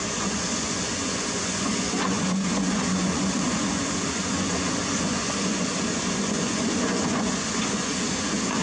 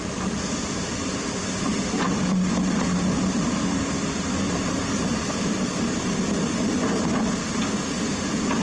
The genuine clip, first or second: second